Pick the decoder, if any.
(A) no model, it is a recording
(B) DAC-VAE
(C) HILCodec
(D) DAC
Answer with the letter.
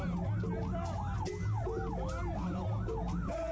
A